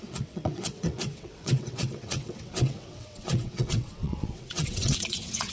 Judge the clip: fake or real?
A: fake